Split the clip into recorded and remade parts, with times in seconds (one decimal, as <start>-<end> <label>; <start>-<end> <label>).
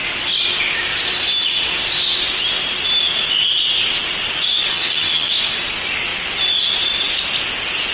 0.0-4.7 recorded; 4.7-5.3 remade; 5.3-7.9 recorded